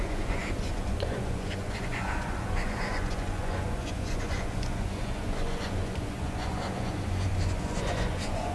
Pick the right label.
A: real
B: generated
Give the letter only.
B